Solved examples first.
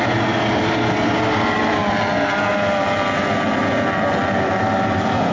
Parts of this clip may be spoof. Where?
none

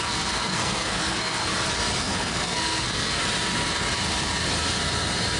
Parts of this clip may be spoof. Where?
0.0-1.4 (codec, SNAC); 2.0-3.2

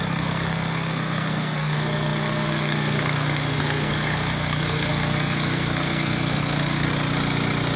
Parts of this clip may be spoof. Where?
0.0-6.9 (codec, SNAC)

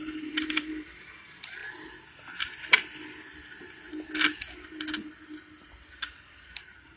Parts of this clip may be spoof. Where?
0.0-1.6 (vocoder, BigVGAN v2); 5.7-7.0

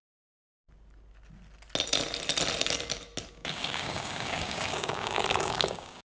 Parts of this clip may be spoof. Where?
0.0-0.5 (codec, DAC); 3.3-6.0

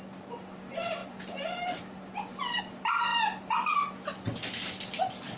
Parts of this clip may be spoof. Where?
none